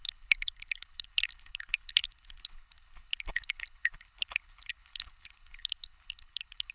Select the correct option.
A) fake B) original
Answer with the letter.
A